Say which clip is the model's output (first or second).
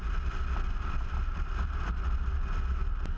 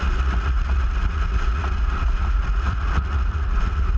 second